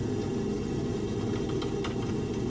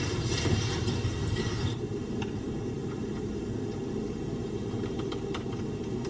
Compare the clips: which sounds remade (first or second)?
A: second